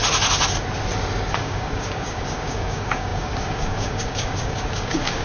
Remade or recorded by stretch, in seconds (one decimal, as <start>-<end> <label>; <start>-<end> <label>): 0.0-1.3 recorded; 1.3-5.2 remade

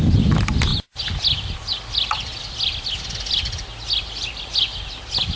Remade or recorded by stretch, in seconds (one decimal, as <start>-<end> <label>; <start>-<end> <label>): 0.0-5.4 recorded

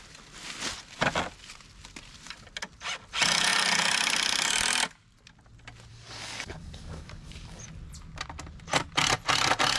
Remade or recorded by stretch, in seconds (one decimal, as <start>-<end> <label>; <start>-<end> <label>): 0.0-5.9 recorded; 5.9-7.6 remade; 7.6-9.8 recorded

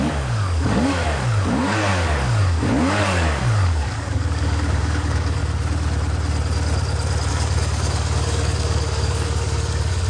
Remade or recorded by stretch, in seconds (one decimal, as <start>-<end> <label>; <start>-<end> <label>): 0.0-5.4 remade; 5.4-7.3 recorded; 7.3-10.1 remade